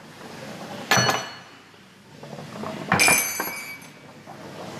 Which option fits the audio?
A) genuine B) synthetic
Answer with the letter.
A